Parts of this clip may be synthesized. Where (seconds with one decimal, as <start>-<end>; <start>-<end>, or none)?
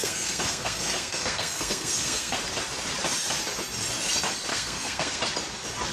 0.0-2.4; 4.5-5.2